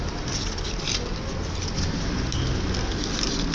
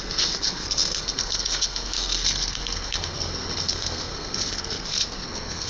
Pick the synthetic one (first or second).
second